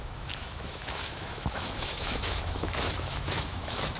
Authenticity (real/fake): fake